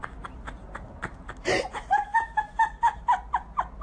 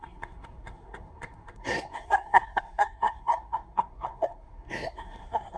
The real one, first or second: first